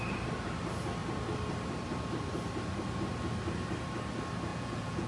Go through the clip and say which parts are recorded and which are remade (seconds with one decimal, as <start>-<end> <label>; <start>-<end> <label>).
0.0-4.5 recorded; 4.5-5.1 remade